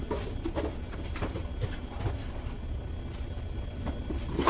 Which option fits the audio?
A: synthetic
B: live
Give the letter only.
B